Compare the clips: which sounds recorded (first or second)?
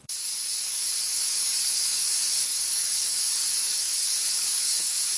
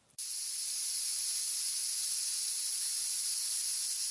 second